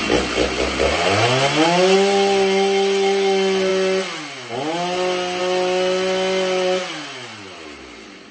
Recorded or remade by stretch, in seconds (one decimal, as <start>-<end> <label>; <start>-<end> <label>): 0.0-8.3 recorded

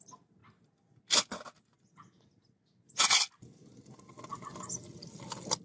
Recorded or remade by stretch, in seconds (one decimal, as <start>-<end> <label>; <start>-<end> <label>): 0.0-5.6 recorded